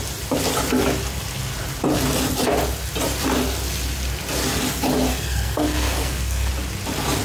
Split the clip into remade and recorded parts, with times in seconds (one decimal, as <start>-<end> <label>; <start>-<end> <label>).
0.0-5.1 recorded; 5.1-6.5 remade; 6.5-7.2 recorded